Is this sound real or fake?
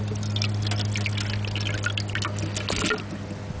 real